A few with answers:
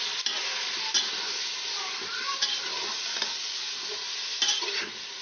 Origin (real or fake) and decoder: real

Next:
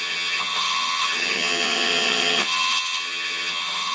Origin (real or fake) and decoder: fake, vocoder, HiFi-GAN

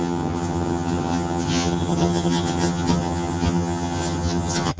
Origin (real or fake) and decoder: fake, vocoder, HiFi-GAN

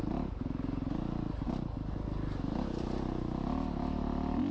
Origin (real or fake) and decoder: real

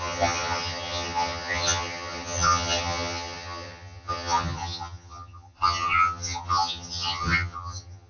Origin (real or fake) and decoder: fake, vocoder, HiFi-GAN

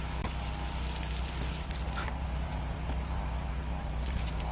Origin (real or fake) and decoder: real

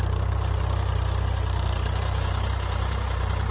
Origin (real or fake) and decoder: real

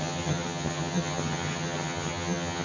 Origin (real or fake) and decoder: fake, vocoder, HiFi-GAN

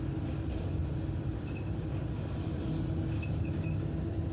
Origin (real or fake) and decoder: real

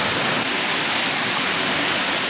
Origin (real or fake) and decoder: real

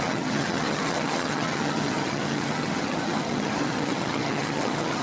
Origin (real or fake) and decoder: fake, vocoder, HiFi-GAN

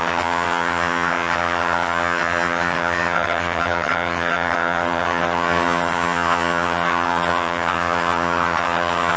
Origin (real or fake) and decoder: fake, vocoder, HiFi-GAN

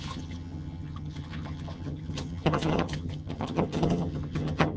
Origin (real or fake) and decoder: fake, vocoder, HiFi-GAN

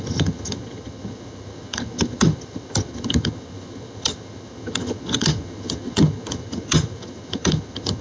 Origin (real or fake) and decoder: fake, vocoder, HiFi-GAN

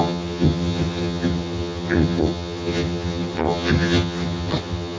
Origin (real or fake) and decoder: fake, vocoder, HiFi-GAN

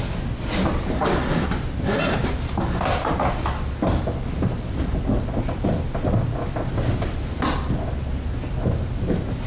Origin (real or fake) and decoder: real